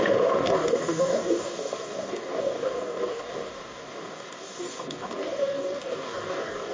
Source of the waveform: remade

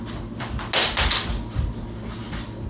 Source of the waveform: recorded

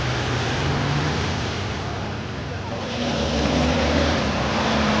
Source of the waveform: recorded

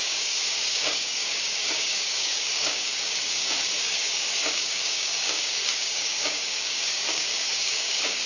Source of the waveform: remade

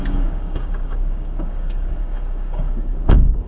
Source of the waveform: remade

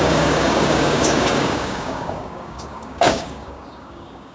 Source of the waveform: remade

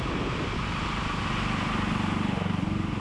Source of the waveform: recorded